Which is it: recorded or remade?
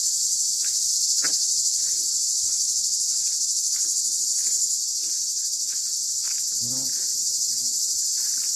recorded